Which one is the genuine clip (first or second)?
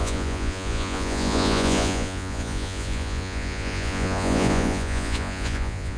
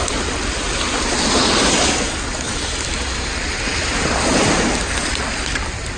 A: second